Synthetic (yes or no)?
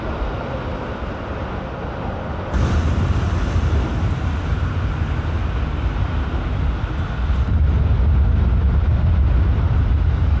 no